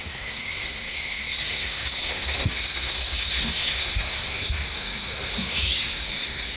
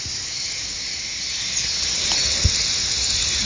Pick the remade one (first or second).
first